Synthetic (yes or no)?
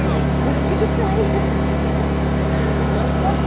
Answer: no